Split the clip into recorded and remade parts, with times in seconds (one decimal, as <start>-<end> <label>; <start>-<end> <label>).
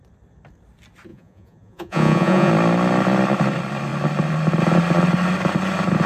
0.0-1.1 recorded; 1.1-2.5 remade; 2.5-6.1 recorded